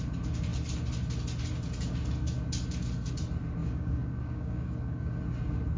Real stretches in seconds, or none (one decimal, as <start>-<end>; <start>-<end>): 0.0-3.6; 5.2-5.8